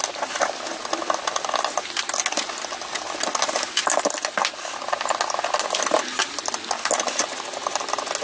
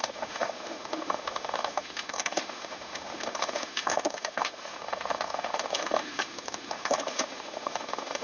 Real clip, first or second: first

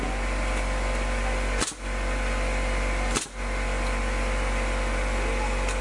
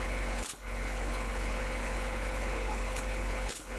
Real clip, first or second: first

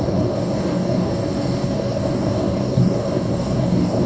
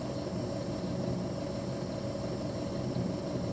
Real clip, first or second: second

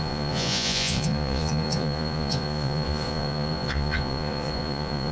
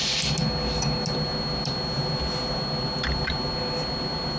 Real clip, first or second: second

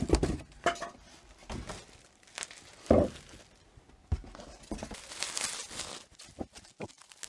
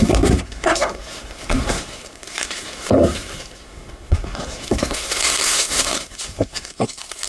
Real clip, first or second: first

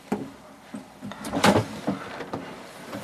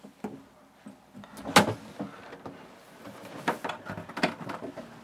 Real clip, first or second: second